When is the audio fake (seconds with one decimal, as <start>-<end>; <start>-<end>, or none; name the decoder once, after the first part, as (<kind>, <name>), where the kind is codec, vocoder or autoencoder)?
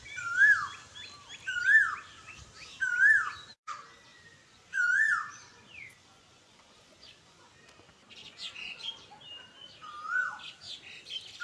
4.1-7.5 (vocoder, Vocos); 8.2-9.1